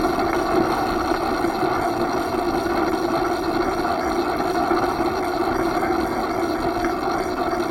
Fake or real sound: real